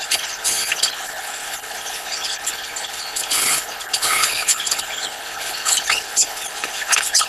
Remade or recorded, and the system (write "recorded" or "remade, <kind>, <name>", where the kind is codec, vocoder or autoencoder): remade, codec, HILCodec